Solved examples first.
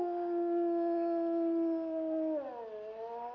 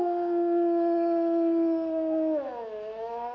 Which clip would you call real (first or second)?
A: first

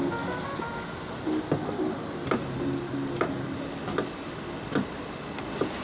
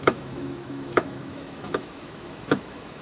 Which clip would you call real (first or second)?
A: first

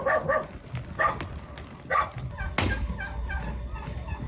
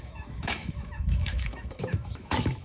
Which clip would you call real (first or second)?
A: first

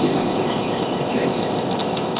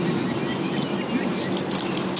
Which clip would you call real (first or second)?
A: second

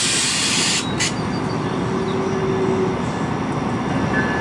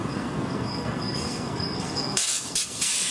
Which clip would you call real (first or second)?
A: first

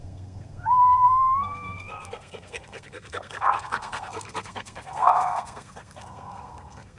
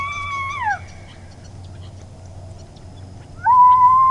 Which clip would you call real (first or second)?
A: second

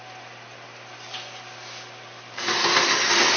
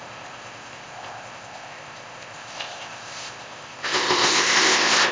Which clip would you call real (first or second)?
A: first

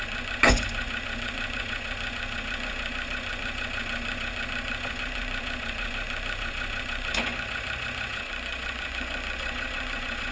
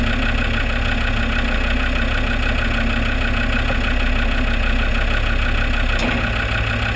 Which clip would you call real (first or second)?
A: second